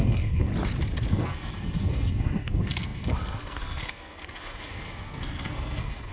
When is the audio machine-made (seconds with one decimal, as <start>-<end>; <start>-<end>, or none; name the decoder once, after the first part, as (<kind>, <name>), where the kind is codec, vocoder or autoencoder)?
0.0-0.5 (codec, SNAC); 1.1-6.1